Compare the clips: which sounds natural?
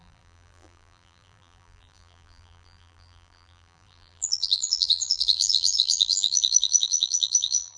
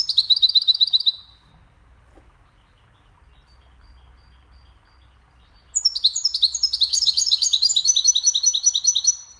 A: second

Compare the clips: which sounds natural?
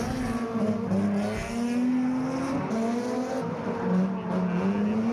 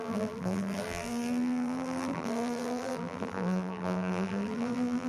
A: first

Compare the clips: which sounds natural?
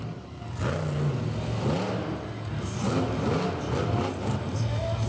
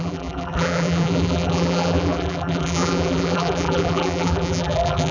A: first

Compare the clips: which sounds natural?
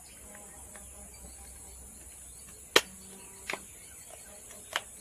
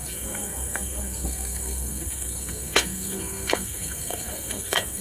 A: first